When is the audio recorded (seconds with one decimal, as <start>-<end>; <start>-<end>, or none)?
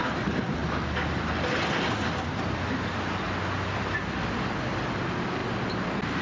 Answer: 0.0-6.2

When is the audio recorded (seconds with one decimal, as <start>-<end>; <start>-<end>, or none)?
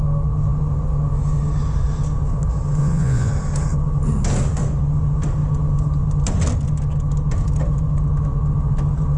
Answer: 0.0-2.8; 3.3-9.2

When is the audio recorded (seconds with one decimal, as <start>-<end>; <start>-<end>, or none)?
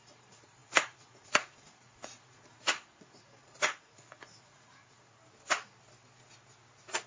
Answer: 5.2-7.1